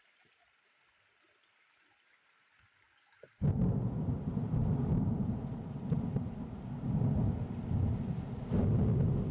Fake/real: real